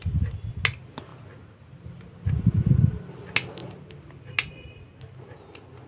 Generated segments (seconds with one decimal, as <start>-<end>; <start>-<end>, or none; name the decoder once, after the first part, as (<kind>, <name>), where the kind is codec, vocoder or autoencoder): none